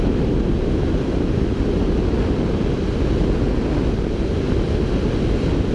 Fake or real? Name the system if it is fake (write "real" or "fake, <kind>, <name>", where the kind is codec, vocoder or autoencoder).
real